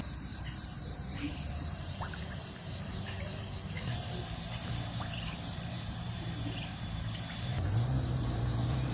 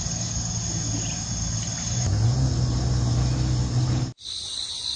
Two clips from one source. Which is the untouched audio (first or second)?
second